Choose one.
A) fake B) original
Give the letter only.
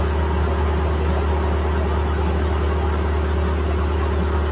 B